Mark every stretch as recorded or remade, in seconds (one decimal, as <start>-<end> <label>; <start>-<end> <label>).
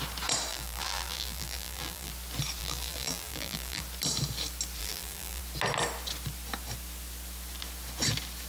0.0-0.5 recorded; 0.5-2.1 remade; 2.1-2.6 recorded; 2.6-3.8 remade; 3.8-4.8 recorded; 4.8-5.4 remade; 5.4-8.5 recorded